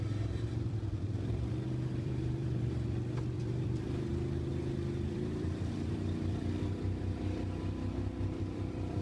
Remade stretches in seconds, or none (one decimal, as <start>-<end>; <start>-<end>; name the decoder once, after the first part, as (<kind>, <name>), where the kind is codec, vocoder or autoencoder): 0.0-4.1 (vocoder, BigVGAN v2); 5.1-9.0